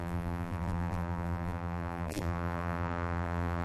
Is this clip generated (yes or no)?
yes